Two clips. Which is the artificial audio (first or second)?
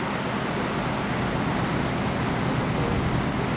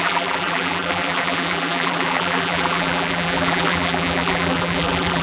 second